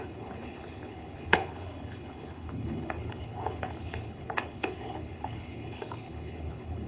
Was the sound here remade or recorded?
remade